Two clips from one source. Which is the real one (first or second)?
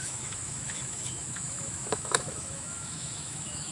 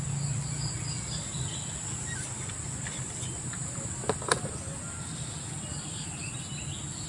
second